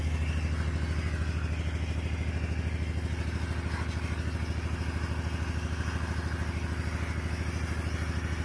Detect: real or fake real